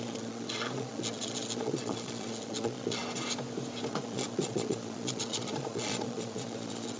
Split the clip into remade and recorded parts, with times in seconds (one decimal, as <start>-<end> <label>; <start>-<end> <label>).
0.0-3.0 remade; 3.0-3.9 recorded; 3.9-7.0 remade